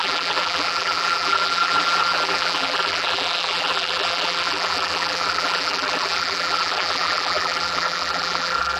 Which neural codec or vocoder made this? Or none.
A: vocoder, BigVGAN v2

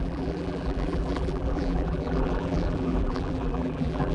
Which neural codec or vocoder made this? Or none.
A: vocoder, BigVGAN v2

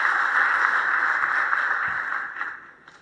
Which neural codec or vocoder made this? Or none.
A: none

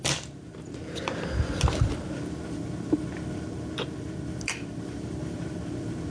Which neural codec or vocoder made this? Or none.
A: vocoder, BigVGAN v2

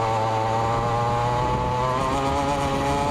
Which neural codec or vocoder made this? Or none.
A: none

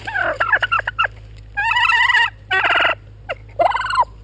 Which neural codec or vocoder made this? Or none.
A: none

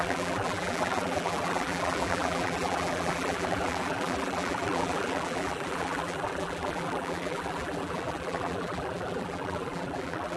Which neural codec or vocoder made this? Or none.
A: vocoder, BigVGAN v2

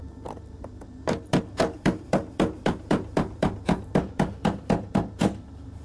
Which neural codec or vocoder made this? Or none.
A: vocoder, BigVGAN v2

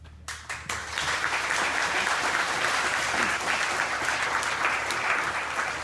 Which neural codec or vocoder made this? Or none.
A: none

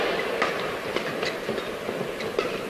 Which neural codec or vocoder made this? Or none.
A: none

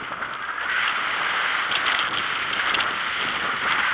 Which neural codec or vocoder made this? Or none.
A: none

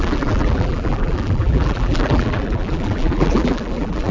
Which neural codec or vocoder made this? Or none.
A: vocoder, BigVGAN v2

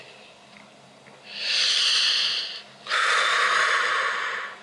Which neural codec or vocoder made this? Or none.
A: vocoder, BigVGAN v2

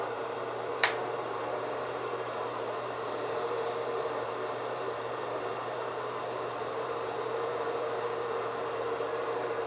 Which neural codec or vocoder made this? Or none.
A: vocoder, BigVGAN v2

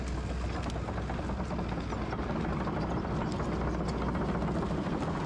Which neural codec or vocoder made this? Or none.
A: none